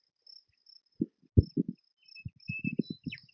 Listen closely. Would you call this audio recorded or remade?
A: recorded